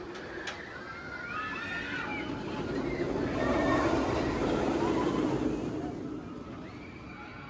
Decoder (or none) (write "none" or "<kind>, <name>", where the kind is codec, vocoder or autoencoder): none